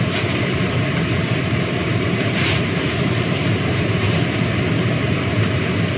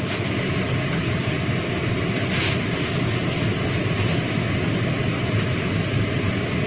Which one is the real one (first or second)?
second